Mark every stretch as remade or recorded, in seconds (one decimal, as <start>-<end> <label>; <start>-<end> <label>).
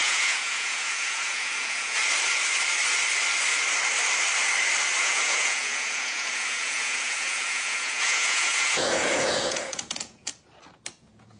0.0-2.0 remade; 2.0-5.0 recorded; 5.0-10.3 remade; 10.3-11.0 recorded; 11.0-11.4 remade